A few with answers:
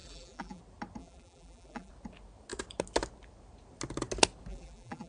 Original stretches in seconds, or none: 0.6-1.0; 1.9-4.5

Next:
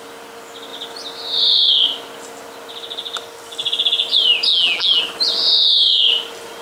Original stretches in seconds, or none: 0.0-4.5; 5.0-6.6

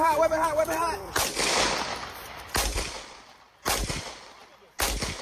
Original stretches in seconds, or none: 4.4-5.2

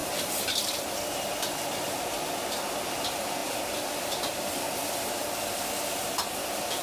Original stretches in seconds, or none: 0.5-3.4; 5.1-6.8